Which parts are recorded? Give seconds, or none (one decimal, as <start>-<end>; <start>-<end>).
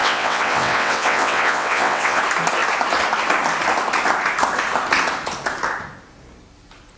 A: 2.2-7.0